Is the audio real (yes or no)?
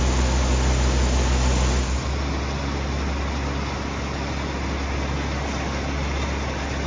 yes